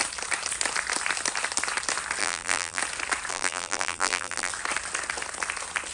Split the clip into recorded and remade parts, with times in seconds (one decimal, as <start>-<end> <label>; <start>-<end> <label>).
0.0-2.2 recorded; 2.2-2.8 remade; 2.8-3.3 recorded; 3.3-4.5 remade; 4.5-5.9 recorded